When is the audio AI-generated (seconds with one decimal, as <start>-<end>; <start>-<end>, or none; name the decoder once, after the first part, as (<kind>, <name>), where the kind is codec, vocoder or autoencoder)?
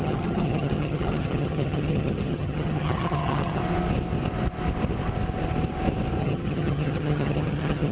0.0-3.6 (vocoder, HiFi-GAN); 6.2-7.9